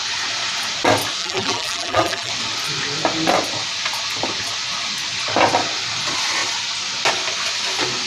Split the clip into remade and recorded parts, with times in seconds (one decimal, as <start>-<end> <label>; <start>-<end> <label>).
0.0-1.2 recorded; 1.2-2.3 remade; 2.3-8.1 recorded